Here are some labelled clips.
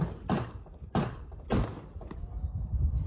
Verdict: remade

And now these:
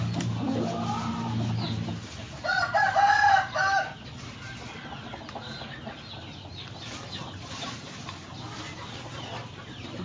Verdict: recorded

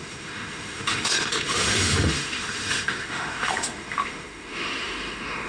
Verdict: remade